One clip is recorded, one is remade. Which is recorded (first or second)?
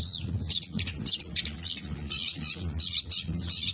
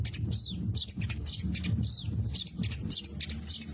second